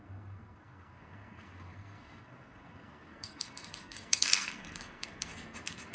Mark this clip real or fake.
fake